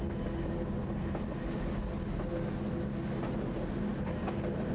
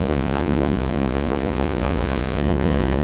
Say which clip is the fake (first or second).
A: second